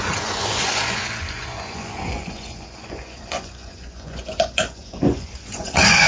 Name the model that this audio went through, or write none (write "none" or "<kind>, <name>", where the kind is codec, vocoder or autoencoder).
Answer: vocoder, Vocos